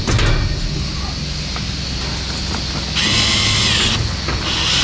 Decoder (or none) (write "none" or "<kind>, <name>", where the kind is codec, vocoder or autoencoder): none